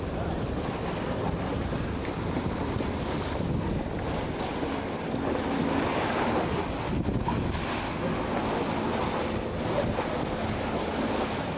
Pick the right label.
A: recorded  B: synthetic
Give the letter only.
A